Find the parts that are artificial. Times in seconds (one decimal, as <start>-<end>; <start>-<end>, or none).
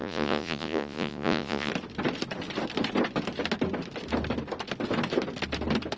0.0-1.7